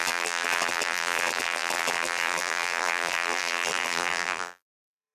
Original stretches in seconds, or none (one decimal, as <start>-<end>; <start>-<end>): none